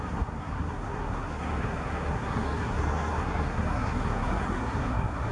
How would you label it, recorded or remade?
remade